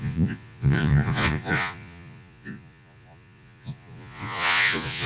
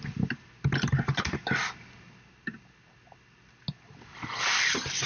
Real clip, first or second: second